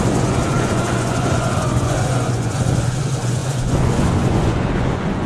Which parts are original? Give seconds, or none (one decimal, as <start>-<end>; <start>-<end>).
none